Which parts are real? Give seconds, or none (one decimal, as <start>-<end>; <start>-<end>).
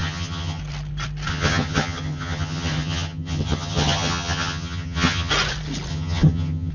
0.6-1.3; 5.3-5.9